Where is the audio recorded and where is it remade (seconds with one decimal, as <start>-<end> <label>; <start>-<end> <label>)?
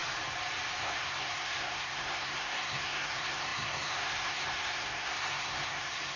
0.0-0.8 recorded; 0.8-6.2 remade